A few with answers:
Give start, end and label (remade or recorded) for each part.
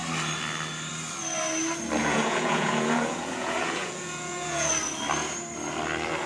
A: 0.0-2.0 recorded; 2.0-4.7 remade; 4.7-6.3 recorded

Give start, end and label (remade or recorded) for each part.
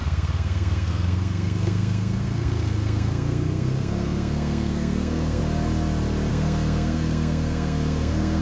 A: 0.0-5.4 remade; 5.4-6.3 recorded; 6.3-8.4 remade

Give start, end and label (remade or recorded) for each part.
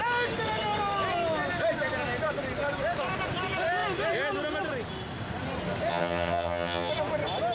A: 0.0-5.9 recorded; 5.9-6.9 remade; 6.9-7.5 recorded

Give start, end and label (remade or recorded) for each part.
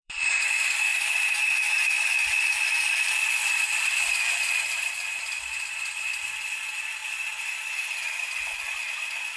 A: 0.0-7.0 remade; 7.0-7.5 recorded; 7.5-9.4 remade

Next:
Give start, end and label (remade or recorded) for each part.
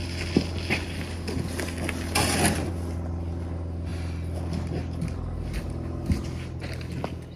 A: 0.0-7.4 recorded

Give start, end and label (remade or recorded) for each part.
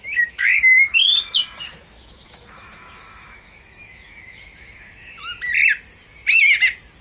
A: 0.0-1.0 remade; 1.0-1.6 recorded; 1.6-5.3 remade; 5.3-7.0 recorded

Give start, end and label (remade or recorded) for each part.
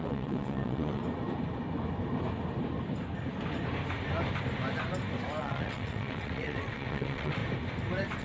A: 0.0-1.0 remade; 1.0-5.4 recorded; 5.4-7.4 remade; 7.4-8.2 recorded